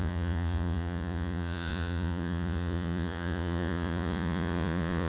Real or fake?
fake